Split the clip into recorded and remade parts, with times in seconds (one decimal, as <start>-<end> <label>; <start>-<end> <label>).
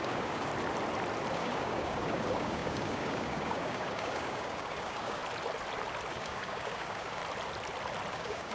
0.0-0.5 remade; 0.5-1.3 recorded; 1.3-5.2 remade; 5.2-6.1 recorded; 6.1-7.2 remade; 7.2-8.1 recorded; 8.1-8.5 remade